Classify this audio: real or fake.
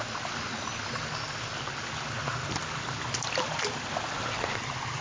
real